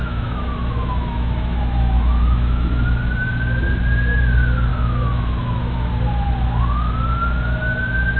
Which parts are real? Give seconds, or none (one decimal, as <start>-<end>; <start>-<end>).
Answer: 2.7-4.7; 5.9-8.2